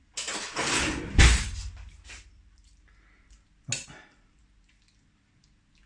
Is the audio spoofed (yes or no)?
no